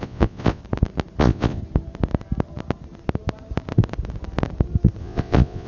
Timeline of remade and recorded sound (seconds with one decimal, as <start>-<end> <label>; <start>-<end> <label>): 0.0-0.6 remade; 0.6-1.2 recorded; 1.2-1.6 remade; 1.6-5.0 recorded; 5.0-5.7 remade